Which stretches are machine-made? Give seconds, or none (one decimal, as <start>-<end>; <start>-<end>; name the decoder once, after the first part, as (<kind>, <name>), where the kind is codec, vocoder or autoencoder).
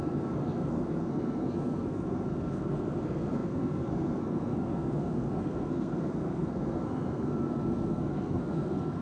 0.0-9.0 (codec, SNAC)